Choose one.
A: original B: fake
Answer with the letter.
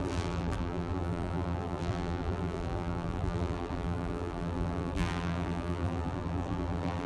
B